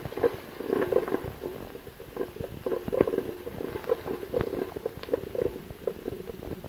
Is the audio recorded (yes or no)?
yes